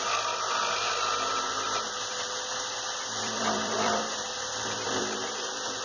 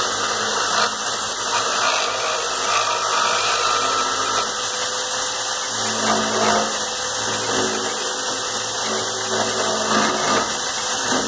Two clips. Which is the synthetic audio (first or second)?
first